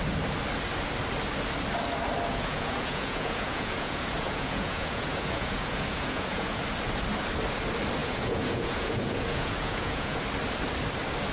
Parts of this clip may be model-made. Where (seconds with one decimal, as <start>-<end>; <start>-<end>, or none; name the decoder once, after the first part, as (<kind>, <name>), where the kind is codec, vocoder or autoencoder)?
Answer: 2.3-6.6 (vocoder, Vocos); 8.0-10.2